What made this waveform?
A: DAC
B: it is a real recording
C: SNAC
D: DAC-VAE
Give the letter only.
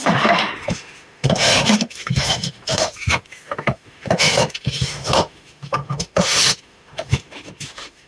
D